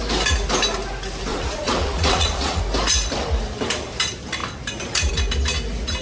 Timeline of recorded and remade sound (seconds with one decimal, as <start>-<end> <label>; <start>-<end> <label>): 0.0-1.3 recorded; 1.3-2.6 remade; 2.6-6.0 recorded